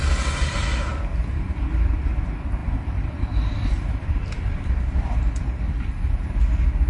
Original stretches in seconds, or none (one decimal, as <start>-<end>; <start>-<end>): 0.0-2.6; 6.4-6.9